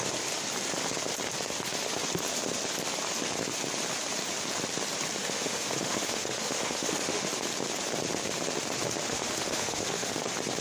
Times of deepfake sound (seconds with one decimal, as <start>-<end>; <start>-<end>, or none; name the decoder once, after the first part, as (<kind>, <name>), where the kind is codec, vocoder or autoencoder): 5.2-7.3 (autoencoder, DAC-VAE); 9.1-10.2